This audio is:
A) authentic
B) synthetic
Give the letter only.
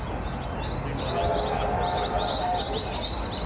A